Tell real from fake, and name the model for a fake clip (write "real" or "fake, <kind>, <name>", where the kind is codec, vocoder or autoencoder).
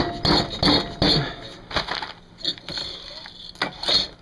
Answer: real